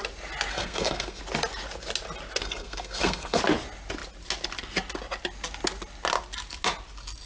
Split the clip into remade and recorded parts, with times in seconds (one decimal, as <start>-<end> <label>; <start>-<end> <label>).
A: 0.0-0.5 recorded; 0.5-1.2 remade; 1.2-2.4 recorded; 2.4-3.4 remade; 3.4-7.3 recorded